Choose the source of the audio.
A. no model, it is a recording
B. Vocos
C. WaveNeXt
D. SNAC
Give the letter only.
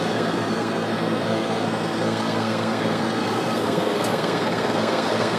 D